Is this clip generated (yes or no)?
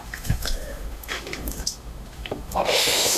yes